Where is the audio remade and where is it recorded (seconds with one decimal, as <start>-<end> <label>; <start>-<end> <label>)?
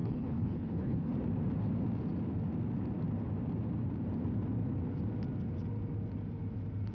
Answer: 0.0-1.1 remade; 1.1-6.9 recorded